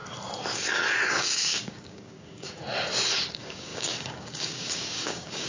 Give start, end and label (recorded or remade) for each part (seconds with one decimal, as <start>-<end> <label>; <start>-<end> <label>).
0.0-1.1 recorded; 1.1-2.6 remade; 2.6-3.3 recorded; 3.3-5.5 remade